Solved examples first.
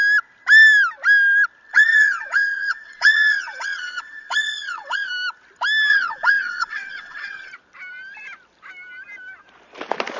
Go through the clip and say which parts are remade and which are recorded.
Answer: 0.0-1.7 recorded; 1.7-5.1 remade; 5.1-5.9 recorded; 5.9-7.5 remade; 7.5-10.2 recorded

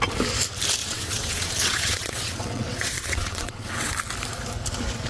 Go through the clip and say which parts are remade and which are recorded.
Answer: 0.0-0.8 recorded; 0.8-3.9 remade; 3.9-5.1 recorded

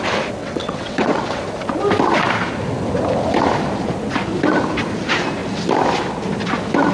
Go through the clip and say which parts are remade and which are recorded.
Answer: 0.0-0.4 recorded; 0.4-1.4 remade; 1.4-6.9 recorded